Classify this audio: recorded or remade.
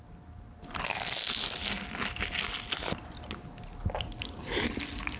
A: recorded